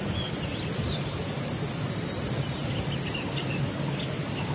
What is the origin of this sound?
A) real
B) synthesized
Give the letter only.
A